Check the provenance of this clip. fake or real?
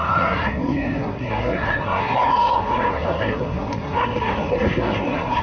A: fake